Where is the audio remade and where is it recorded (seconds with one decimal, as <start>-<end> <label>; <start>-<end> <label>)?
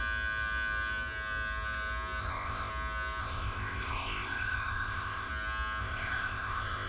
0.0-2.2 recorded; 2.2-2.7 remade; 2.7-3.2 recorded; 3.2-5.3 remade; 5.3-5.8 recorded; 5.8-6.9 remade